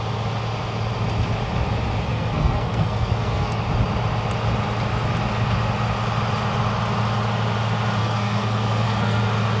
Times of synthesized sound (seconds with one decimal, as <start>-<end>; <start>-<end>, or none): 2.1-3.6; 8.0-9.2